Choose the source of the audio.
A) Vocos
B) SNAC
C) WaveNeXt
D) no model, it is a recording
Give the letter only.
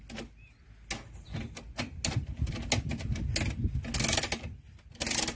D